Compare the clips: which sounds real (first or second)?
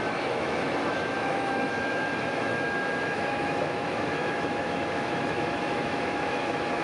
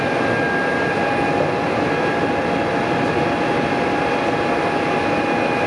second